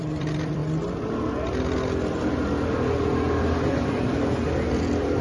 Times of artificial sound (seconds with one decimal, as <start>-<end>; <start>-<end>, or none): 0.0-0.6; 3.7-5.2